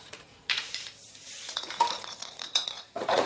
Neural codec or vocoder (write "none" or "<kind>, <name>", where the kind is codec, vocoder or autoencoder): vocoder, Vocos